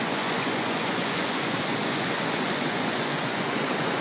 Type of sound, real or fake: fake